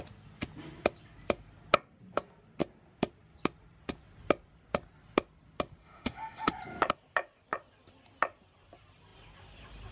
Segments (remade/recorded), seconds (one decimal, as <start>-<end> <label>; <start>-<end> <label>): 0.0-5.8 recorded; 5.8-6.5 remade; 6.5-9.9 recorded